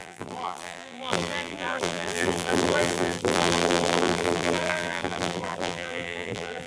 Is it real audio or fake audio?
fake